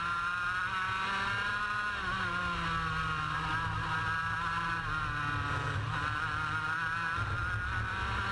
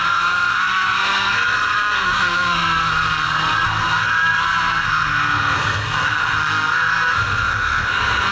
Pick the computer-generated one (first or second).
second